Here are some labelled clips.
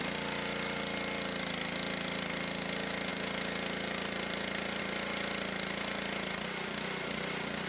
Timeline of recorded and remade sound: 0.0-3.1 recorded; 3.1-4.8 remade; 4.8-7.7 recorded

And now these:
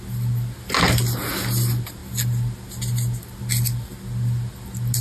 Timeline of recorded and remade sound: 0.0-5.0 recorded